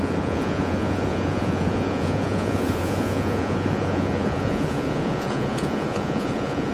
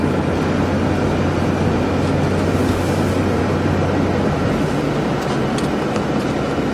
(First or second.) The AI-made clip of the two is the first